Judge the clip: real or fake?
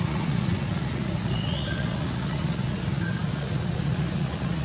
fake